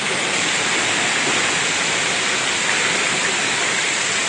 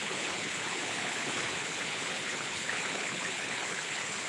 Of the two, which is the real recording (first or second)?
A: first